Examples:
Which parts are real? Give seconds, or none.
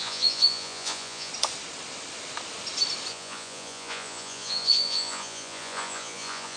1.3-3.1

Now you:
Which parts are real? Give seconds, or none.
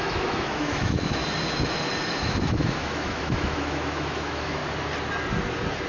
1.2-2.1; 4.6-5.9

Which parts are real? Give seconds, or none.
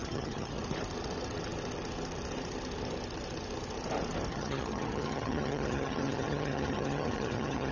0.6-4.3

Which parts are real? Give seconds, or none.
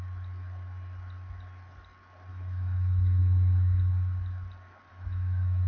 0.0-2.3; 3.2-4.9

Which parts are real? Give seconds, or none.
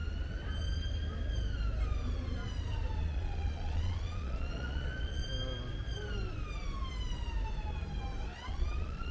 0.0-3.0; 5.2-8.4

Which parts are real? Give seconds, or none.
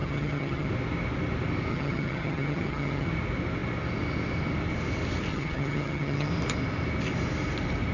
0.7-1.7; 3.1-5.3; 6.3-7.9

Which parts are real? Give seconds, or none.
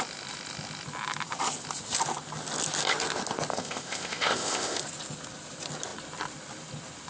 0.0-3.5; 4.8-7.1